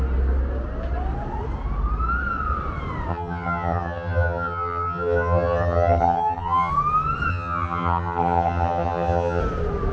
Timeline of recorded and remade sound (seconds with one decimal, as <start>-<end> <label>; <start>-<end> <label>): 0.0-3.1 recorded; 3.1-6.7 remade; 6.7-7.3 recorded; 7.3-9.4 remade; 9.4-9.9 recorded

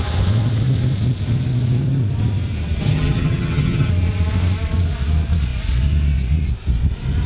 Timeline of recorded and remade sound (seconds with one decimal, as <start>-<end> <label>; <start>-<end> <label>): 0.0-2.8 recorded; 2.8-3.9 remade; 3.9-7.3 recorded

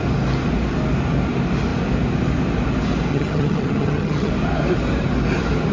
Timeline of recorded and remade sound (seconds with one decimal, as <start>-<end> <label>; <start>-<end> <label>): 0.0-3.1 recorded; 3.1-4.3 remade; 4.3-5.7 recorded

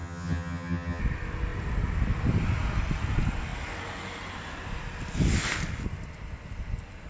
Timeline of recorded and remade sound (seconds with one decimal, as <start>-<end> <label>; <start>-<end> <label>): 0.0-1.0 remade; 1.0-7.1 recorded

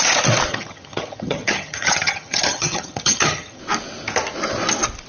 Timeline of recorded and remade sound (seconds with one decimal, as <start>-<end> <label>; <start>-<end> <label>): 0.0-0.5 recorded; 0.5-3.6 remade; 3.6-5.1 recorded

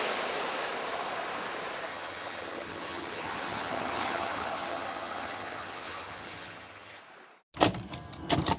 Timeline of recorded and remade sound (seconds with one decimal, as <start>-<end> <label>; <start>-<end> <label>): 0.0-1.9 recorded; 1.9-7.0 remade; 7.0-8.6 recorded

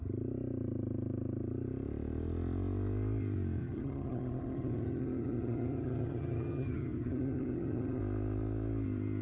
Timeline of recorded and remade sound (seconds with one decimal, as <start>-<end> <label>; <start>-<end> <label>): 0.0-3.6 recorded; 3.6-8.0 remade; 8.0-9.2 recorded

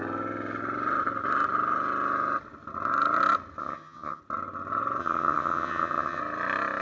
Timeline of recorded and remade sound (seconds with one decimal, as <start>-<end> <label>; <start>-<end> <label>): 0.0-3.6 recorded; 3.6-4.2 remade; 4.2-5.0 recorded; 5.0-6.2 remade; 6.2-6.8 recorded